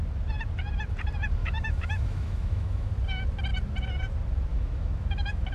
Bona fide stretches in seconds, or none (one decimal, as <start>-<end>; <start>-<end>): 0.0-1.4; 2.9-4.5